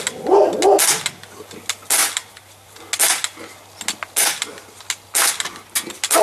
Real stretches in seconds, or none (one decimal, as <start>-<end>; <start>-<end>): 0.0-2.0; 2.8-6.2